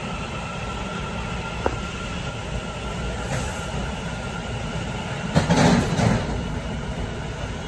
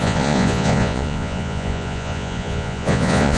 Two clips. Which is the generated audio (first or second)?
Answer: second